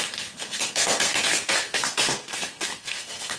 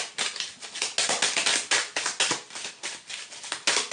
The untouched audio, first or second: second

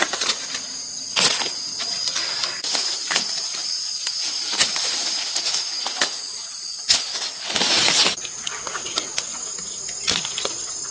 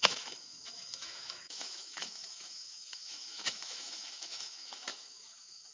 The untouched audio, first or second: first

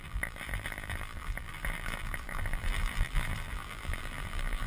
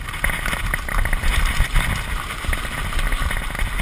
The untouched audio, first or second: second